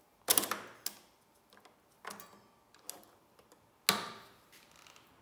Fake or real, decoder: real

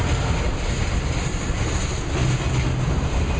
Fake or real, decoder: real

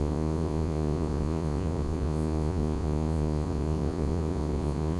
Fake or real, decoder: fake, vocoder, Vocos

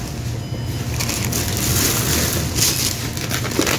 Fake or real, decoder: real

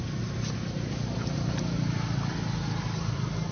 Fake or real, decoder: real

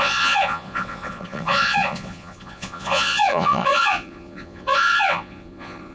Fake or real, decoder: fake, vocoder, Vocos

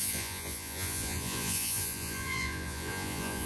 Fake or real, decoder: fake, vocoder, Vocos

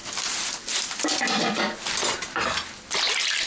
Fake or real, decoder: real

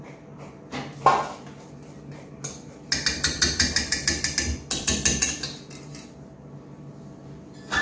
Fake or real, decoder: real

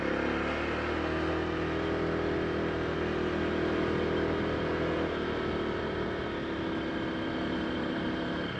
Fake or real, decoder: real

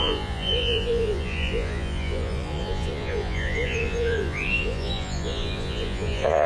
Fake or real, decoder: fake, vocoder, Vocos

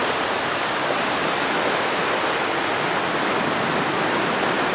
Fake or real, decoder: real